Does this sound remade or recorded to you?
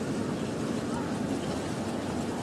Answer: recorded